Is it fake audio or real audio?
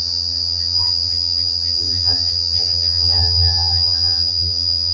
fake